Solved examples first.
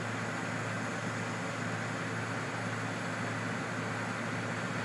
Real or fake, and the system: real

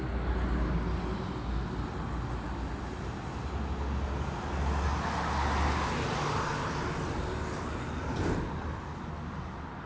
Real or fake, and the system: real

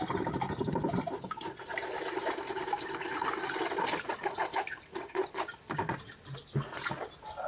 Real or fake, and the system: real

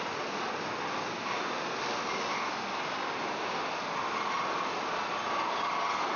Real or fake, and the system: real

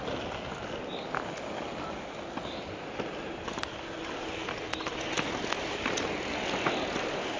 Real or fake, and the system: real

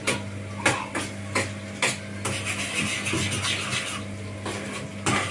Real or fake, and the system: real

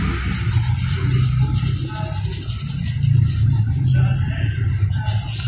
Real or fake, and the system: real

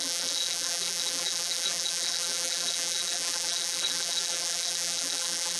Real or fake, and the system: fake, vocoder, BigVGAN v2